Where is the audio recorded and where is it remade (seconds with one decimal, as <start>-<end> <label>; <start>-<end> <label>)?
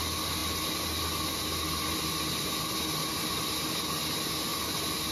0.0-5.1 recorded